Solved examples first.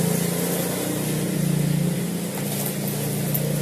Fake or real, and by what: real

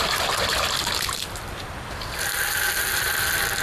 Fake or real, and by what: real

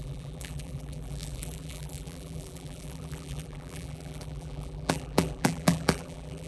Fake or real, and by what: fake, vocoder, BigVGAN v2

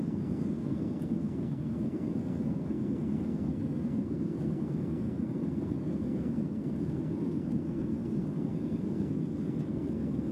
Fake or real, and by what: fake, codec, SNAC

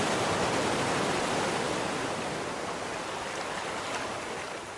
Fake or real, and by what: real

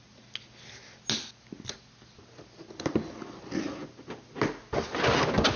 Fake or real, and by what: real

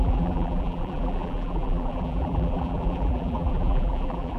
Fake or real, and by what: fake, vocoder, BigVGAN v2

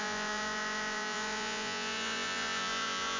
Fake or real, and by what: fake, vocoder, Vocos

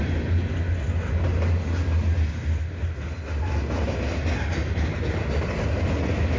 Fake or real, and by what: real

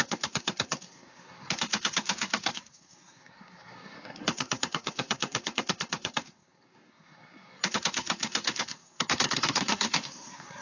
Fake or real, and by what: fake, codec, SNAC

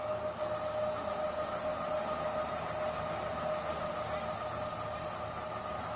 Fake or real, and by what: real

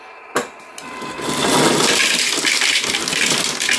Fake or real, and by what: real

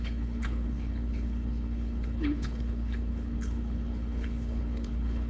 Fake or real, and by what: fake, codec, HILCodec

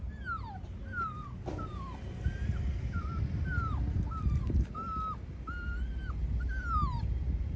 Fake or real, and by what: real